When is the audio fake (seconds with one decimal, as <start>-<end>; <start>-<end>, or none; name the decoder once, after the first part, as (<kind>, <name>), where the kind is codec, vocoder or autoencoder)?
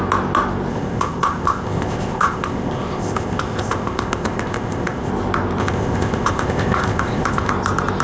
0.7-5.1 (codec, ZipCodec); 5.6-7.5